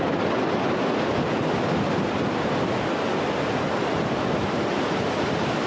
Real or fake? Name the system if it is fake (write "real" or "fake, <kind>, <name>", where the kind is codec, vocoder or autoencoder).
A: real